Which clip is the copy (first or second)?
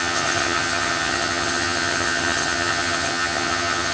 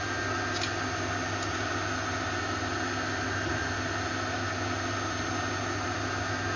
first